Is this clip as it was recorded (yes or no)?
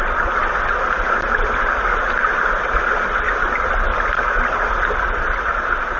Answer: yes